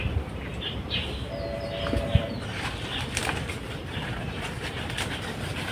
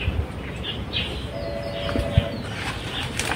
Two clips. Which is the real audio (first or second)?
second